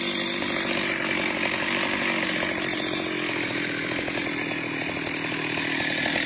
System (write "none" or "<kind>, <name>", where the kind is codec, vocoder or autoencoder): none